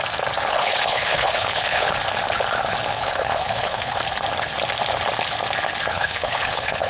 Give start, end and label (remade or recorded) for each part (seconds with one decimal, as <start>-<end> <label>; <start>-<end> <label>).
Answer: 0.0-0.5 recorded; 0.5-1.9 remade; 1.9-2.9 recorded; 2.9-4.0 remade; 4.0-5.9 recorded; 5.9-6.9 remade